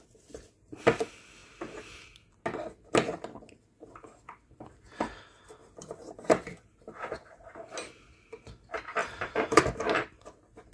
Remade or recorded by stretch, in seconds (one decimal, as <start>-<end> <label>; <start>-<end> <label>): 0.0-5.6 recorded; 5.6-7.1 remade; 7.1-9.0 recorded; 9.0-9.6 remade; 9.6-10.7 recorded